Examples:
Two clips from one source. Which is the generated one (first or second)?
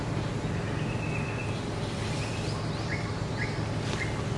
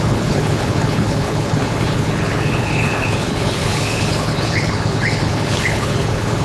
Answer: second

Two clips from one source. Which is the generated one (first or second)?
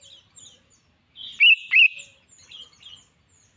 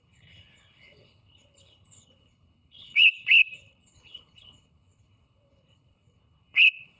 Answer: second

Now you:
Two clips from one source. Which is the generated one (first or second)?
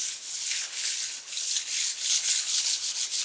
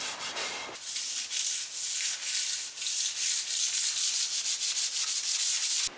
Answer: first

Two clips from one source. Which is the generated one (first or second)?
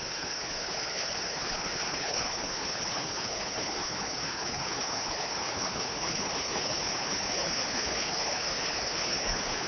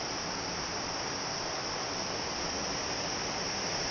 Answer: first